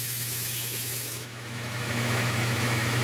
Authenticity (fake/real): fake